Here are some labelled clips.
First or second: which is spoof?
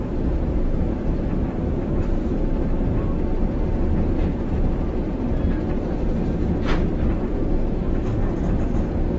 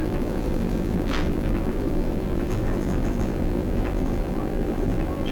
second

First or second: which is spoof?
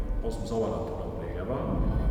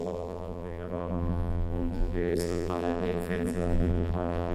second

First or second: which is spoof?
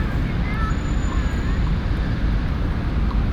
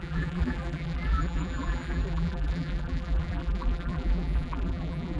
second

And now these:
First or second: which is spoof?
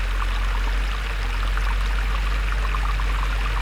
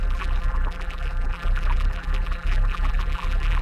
second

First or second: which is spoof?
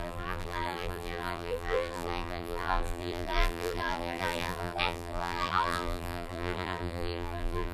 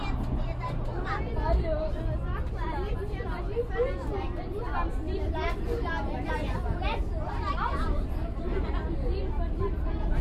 first